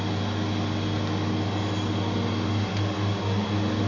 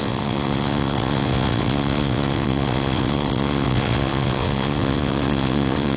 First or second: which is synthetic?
second